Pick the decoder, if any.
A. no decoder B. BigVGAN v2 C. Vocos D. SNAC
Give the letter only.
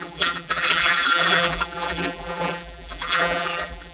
B